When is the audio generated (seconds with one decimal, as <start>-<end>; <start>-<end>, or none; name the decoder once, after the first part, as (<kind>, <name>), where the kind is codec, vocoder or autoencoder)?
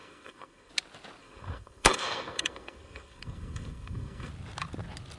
0.0-0.7 (codec, SNAC); 1.2-4.3